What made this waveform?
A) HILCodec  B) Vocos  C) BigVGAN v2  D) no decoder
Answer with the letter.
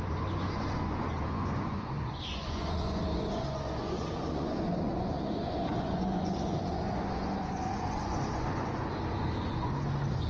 B